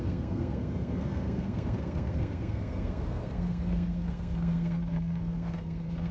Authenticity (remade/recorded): remade